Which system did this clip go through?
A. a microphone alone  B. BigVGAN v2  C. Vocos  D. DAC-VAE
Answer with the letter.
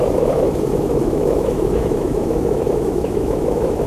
D